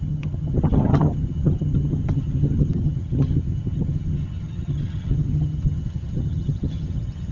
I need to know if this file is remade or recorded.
remade